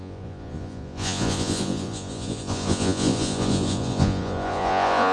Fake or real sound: fake